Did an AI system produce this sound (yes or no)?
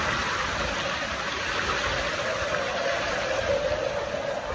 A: no